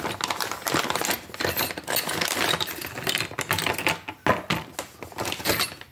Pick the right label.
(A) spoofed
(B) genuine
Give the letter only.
B